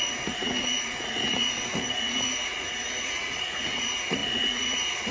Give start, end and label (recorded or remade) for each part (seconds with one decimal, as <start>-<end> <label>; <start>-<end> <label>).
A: 0.0-5.1 remade